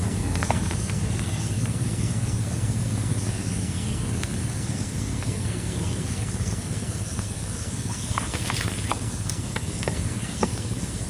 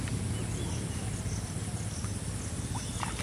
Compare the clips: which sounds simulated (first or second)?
first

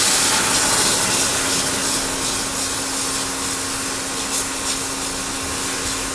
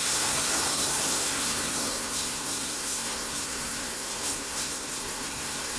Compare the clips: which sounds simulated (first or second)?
second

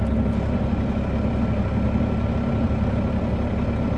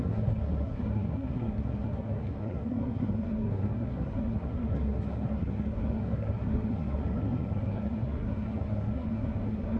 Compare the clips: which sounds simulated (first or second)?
second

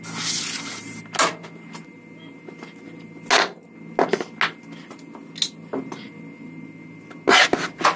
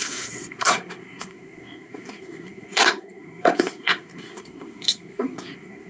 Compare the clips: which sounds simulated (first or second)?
second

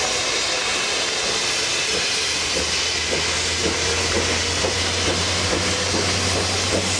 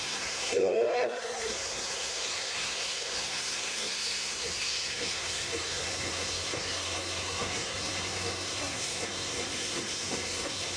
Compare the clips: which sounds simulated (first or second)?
second